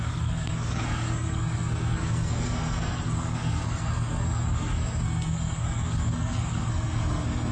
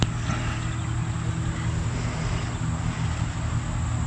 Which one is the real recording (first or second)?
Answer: second